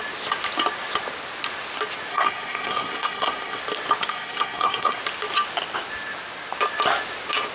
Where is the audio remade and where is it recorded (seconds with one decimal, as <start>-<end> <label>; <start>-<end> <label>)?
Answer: 0.0-2.1 recorded; 2.1-3.6 remade; 3.6-4.1 recorded; 4.1-5.0 remade; 5.0-7.5 recorded